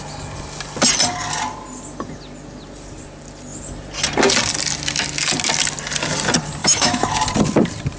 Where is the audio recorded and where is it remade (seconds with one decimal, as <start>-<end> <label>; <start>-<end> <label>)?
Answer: 0.0-6.6 recorded; 6.6-7.2 remade; 7.2-8.0 recorded